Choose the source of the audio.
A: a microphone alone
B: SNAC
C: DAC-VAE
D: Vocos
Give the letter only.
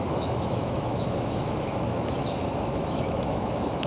C